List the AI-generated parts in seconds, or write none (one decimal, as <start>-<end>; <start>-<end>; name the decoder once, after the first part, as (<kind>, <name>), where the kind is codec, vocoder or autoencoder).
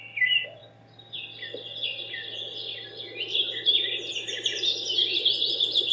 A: none